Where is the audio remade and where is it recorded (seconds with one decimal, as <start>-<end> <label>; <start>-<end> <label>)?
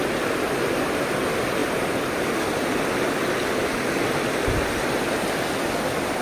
0.0-6.2 recorded